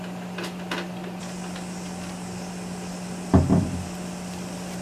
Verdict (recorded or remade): recorded